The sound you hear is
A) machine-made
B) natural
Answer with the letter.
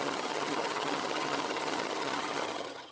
A